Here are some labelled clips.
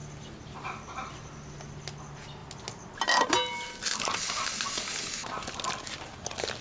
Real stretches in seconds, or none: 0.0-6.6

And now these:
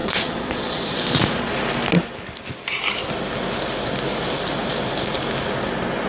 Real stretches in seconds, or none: 1.5-6.1

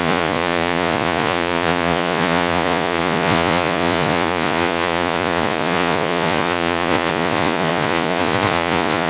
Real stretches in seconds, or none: none